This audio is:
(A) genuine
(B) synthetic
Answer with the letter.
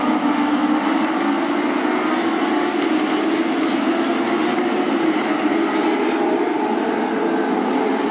A